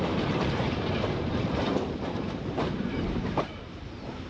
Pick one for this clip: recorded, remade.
remade